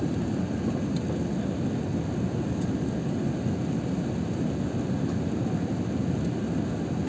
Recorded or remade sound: recorded